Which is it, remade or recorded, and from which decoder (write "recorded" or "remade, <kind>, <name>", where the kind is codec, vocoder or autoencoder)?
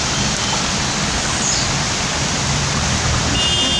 recorded